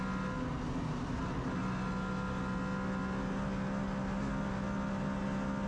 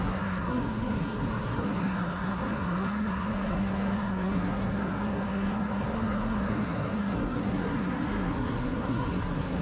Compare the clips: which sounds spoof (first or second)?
second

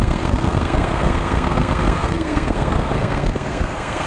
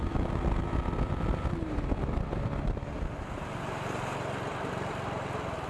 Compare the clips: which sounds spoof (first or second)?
first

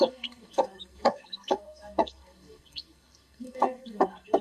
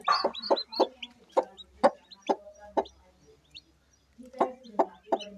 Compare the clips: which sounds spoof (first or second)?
first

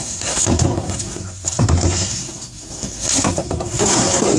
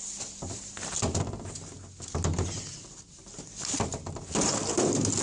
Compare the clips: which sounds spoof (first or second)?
first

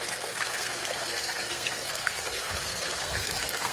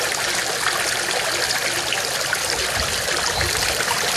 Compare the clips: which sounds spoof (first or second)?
first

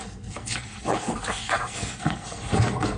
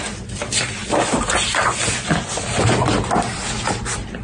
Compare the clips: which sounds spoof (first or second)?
first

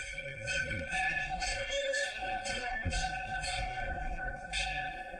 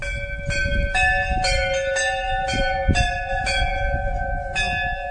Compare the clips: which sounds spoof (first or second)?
first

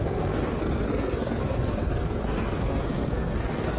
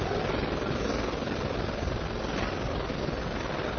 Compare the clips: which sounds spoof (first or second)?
first